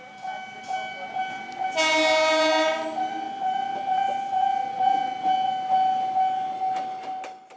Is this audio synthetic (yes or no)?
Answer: no